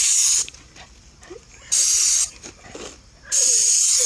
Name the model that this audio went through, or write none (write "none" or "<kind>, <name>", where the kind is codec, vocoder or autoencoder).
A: none